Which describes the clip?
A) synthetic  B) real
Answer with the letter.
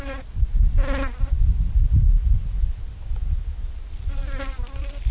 B